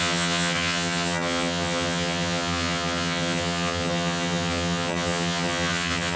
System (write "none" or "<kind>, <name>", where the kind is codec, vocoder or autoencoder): vocoder, HiFi-GAN